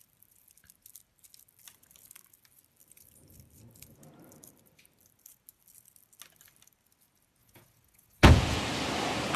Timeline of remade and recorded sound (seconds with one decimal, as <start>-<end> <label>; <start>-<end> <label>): 0.0-7.4 recorded; 7.4-8.6 remade; 8.6-9.4 recorded